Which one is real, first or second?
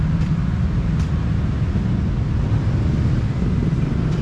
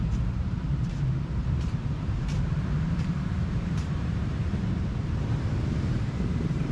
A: first